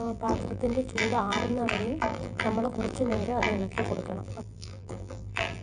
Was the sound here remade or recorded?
remade